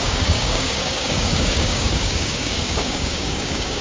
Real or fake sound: fake